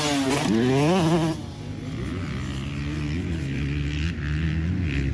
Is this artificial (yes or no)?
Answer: no